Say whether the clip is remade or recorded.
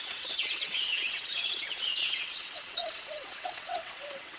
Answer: remade